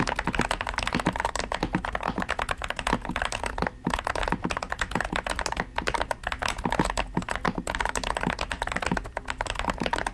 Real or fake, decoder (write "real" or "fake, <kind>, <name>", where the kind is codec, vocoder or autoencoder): real